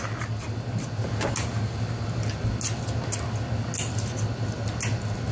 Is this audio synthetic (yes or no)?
no